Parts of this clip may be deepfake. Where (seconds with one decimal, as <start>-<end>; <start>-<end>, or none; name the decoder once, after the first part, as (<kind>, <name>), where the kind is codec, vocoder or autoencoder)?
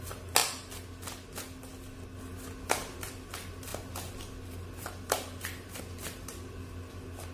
none